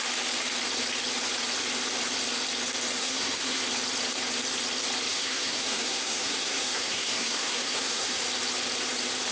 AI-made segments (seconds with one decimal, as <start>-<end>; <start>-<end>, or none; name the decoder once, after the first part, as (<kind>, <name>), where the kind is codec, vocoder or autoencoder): 3.0-3.6 (codec, SNAC); 5.1-8.2